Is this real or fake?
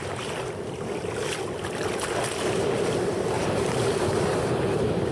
real